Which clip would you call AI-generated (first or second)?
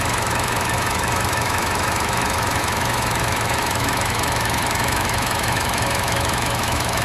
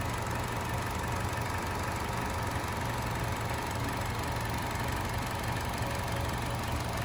first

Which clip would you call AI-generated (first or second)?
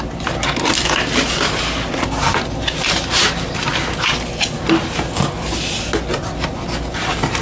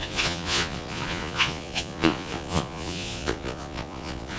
second